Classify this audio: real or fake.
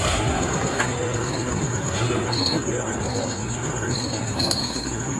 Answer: fake